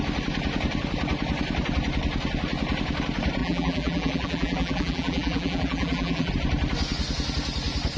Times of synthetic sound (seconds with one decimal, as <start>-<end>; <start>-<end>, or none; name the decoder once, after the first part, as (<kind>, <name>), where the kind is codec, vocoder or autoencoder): 3.4-6.3 (vocoder, BigVGAN v2)